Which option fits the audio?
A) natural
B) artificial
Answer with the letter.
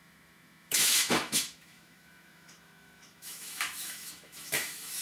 B